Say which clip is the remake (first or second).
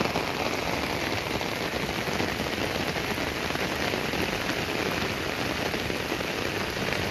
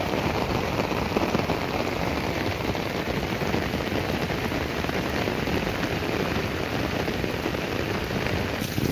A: second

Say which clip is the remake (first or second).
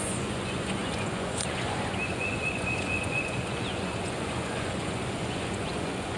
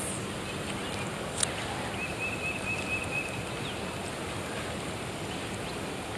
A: first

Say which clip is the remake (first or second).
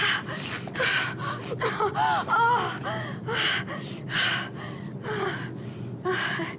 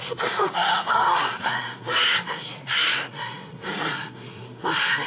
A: second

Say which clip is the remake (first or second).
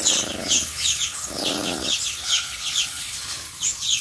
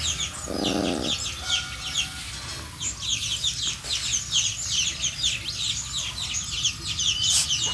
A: first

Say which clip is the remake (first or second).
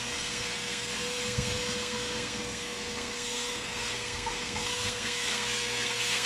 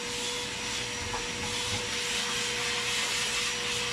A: first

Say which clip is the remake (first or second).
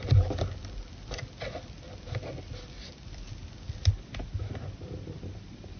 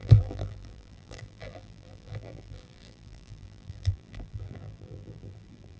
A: second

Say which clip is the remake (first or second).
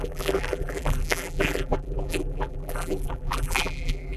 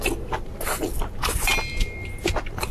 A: first